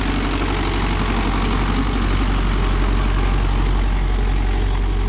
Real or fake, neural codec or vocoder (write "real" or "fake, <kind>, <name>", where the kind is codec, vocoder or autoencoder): real